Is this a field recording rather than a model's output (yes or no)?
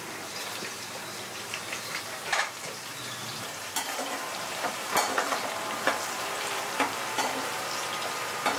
no